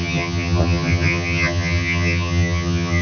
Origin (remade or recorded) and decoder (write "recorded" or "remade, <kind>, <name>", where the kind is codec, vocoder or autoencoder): remade, vocoder, HiFi-GAN